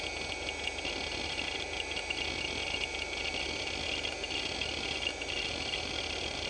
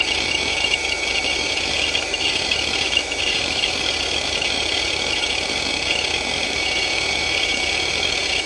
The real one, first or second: first